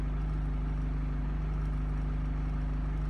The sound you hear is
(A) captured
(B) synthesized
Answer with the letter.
A